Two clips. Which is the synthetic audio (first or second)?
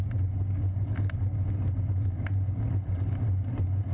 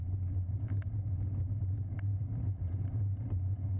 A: second